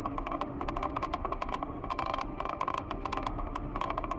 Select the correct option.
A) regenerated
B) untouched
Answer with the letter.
A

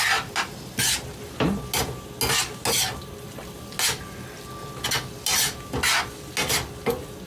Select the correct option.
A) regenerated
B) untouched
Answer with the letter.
B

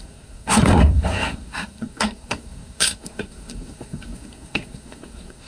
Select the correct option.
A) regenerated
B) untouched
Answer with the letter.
A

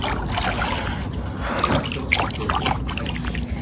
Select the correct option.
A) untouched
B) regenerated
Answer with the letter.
A